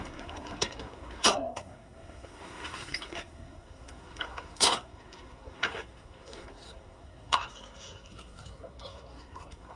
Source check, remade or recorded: remade